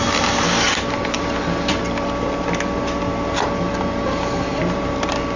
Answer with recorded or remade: recorded